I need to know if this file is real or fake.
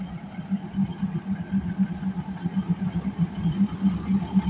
real